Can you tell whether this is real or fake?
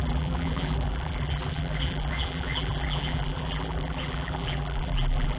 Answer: fake